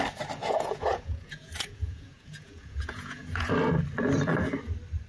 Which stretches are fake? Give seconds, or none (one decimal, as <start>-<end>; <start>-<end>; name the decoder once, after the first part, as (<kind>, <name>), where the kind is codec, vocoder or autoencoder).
0.4-3.5 (vocoder, Vocos)